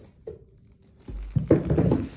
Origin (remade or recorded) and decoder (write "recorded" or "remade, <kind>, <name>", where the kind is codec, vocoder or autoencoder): recorded